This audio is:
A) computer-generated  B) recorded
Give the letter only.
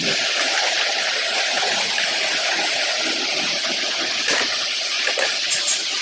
B